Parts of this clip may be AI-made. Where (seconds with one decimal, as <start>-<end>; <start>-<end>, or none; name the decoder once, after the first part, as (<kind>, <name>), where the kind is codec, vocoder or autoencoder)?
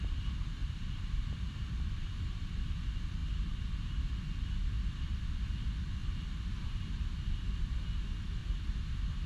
0.6-2.5 (vocoder, BigVGAN v2); 6.0-6.9; 8.4-9.3